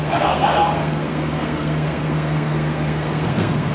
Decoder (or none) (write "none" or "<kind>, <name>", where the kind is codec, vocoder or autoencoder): codec, SNAC